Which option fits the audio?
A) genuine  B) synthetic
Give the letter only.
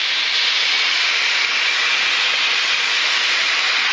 A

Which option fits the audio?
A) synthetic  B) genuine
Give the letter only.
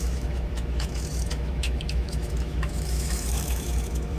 A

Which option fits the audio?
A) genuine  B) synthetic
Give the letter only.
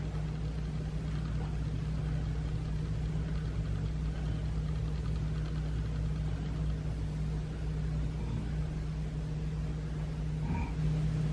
A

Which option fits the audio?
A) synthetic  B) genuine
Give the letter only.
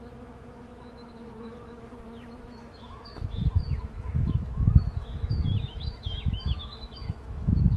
A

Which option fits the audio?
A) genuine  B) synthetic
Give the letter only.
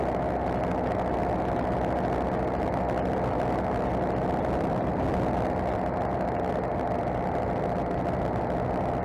A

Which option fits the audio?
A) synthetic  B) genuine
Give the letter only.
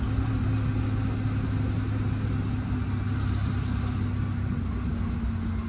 B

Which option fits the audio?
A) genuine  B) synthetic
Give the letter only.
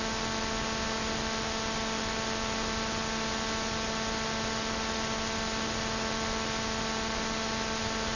A